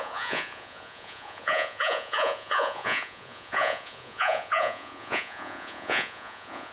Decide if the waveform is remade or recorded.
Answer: remade